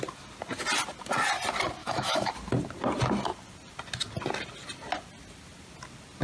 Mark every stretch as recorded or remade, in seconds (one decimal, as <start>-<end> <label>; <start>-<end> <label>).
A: 0.0-1.8 recorded; 1.8-2.3 remade; 2.3-6.2 recorded